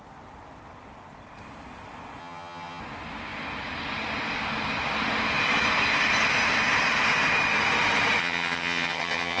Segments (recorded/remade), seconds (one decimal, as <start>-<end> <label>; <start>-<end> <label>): 0.0-2.2 recorded; 2.2-2.8 remade; 2.8-8.2 recorded; 8.2-9.4 remade